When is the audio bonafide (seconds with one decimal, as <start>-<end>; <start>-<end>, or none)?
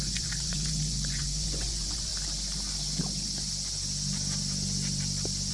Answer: 2.1-5.5